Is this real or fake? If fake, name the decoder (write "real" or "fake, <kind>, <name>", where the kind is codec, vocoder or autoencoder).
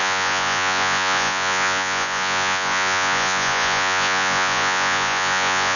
fake, vocoder, Vocos